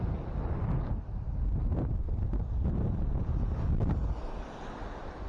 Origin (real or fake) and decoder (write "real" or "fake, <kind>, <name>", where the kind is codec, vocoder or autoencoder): real